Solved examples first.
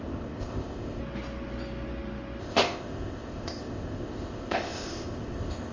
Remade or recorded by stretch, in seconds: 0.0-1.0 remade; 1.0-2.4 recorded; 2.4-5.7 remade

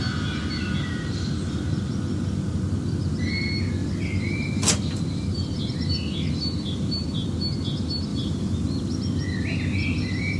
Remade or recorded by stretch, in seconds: 0.0-8.1 recorded; 8.1-9.0 remade; 9.0-10.4 recorded

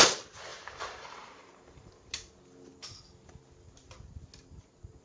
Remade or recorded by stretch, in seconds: 0.0-0.5 recorded; 0.5-2.1 remade; 2.1-5.0 recorded

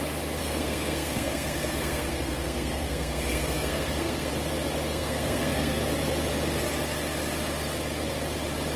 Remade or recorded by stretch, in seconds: 0.0-0.4 recorded; 0.4-4.3 remade; 4.3-4.9 recorded; 4.9-5.9 remade; 5.9-8.8 recorded